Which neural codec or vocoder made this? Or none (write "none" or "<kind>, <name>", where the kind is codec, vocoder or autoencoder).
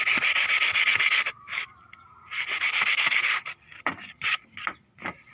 none